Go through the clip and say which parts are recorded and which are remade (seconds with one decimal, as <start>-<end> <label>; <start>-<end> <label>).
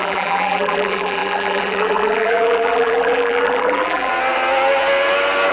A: 0.0-4.1 remade; 4.1-5.5 recorded